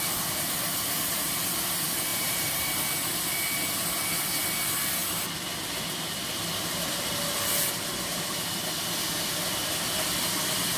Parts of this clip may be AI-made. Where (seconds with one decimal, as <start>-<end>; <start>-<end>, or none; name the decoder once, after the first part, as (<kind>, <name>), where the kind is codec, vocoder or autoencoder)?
2.1-2.7 (vocoder, BigVGAN v2)